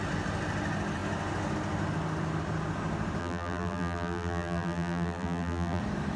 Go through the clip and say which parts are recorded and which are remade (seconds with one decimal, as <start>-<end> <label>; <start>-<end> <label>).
0.0-3.2 recorded; 3.2-5.8 remade; 5.8-6.2 recorded